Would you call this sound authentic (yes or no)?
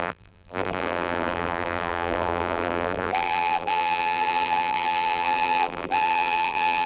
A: no